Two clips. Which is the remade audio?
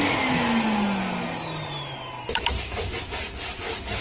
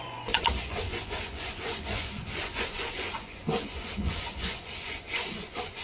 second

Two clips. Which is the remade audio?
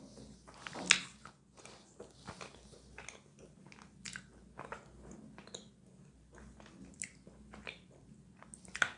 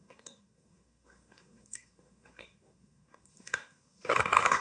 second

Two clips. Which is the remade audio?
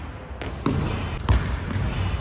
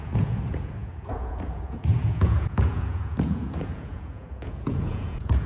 second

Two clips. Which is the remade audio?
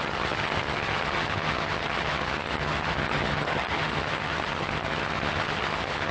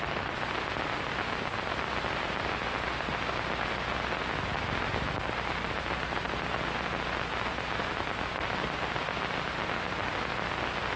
first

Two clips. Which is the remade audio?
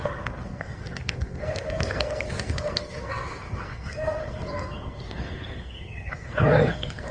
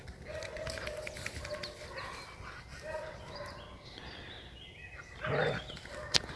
first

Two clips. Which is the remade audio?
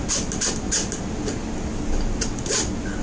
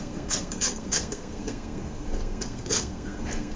second